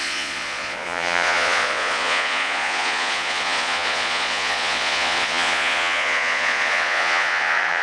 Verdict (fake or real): fake